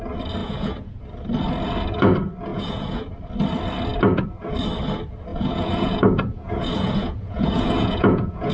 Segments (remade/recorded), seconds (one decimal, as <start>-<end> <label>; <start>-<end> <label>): 0.0-0.4 recorded; 0.4-1.0 remade; 1.0-2.5 recorded; 2.5-3.1 remade; 3.1-5.3 recorded; 5.3-8.5 remade